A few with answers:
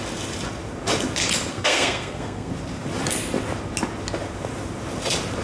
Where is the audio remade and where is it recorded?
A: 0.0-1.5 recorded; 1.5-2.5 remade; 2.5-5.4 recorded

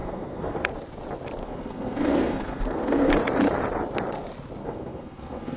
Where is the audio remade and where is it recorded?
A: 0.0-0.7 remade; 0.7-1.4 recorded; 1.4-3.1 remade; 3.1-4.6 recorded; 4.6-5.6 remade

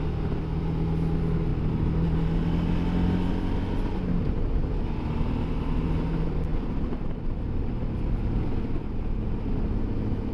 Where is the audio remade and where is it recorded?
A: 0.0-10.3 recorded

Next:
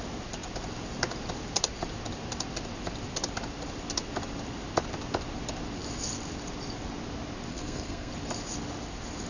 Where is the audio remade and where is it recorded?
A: 0.0-7.5 recorded; 7.5-8.1 remade; 8.1-9.3 recorded

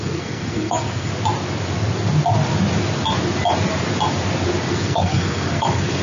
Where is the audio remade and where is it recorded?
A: 0.0-1.1 remade; 1.1-4.7 recorded; 4.7-6.0 remade

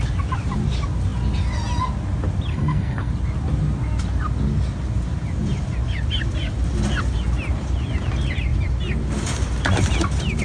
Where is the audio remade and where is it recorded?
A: 0.0-2.5 recorded; 2.5-3.1 remade; 3.1-10.4 recorded

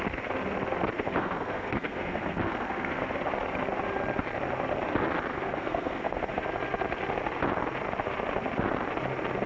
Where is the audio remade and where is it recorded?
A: 0.0-1.2 recorded; 1.2-2.9 remade; 2.9-5.3 recorded; 5.3-6.3 remade; 6.3-9.5 recorded